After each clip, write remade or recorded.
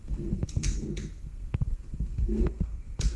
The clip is remade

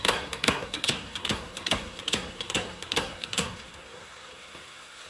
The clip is remade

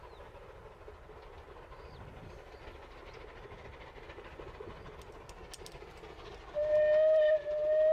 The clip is recorded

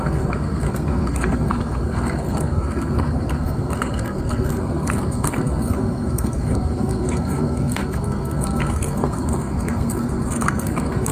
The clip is remade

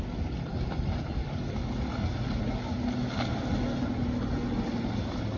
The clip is recorded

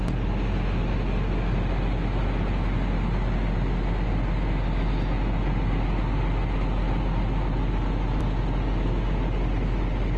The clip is recorded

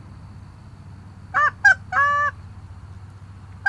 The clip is recorded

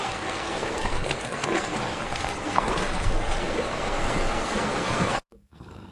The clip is remade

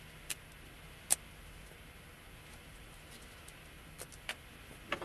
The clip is recorded